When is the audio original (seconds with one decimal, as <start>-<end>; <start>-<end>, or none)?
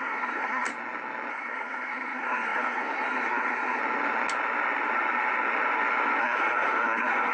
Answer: 0.7-1.3; 3.8-6.2